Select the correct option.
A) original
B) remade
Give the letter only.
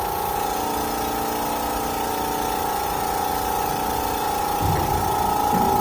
A